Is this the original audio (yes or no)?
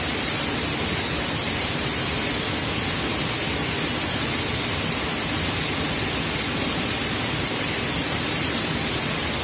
yes